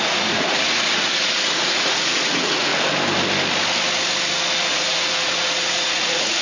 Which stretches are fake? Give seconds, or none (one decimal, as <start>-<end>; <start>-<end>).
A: 0.0-2.7; 4.7-6.4